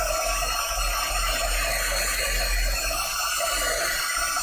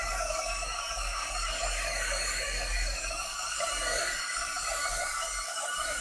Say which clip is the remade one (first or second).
second